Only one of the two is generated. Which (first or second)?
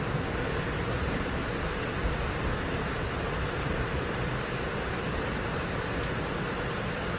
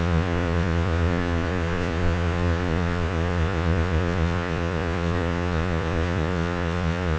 second